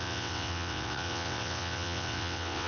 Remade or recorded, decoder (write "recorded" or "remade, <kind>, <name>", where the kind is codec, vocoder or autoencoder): remade, vocoder, WaveNeXt